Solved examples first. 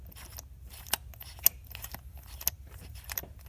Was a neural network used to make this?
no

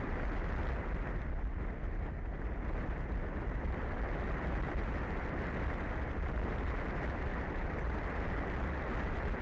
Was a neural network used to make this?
no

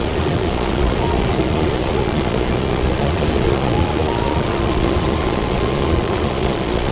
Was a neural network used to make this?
yes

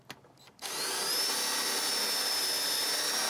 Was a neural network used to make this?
no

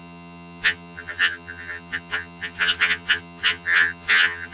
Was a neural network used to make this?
yes